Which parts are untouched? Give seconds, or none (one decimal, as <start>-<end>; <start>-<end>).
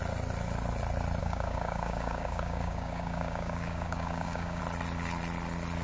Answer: 0.0-1.2; 4.6-5.8